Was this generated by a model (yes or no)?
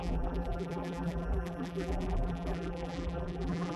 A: yes